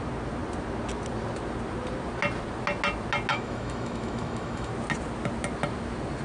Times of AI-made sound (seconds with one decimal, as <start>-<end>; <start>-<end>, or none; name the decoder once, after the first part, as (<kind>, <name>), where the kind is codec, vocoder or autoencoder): 3.3-4.7 (autoencoder, DAC-VAE)